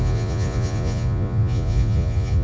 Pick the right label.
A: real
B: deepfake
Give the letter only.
B